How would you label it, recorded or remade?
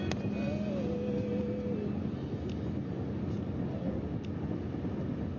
recorded